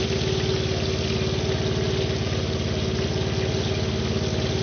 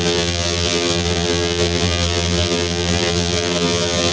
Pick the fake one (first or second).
second